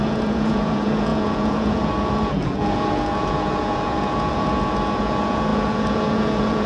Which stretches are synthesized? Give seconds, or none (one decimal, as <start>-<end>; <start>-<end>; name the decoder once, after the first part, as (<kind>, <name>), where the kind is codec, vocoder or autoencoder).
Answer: 0.0-6.7 (vocoder, Vocos)